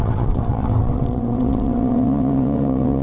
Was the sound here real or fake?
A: fake